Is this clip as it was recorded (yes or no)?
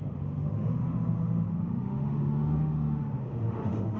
no